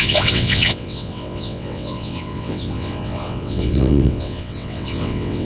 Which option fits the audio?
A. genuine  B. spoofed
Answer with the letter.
B